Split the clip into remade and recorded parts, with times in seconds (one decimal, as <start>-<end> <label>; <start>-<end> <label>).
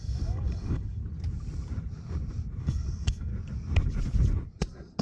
0.0-1.0 remade; 1.0-2.6 recorded; 2.6-3.3 remade; 3.3-5.0 recorded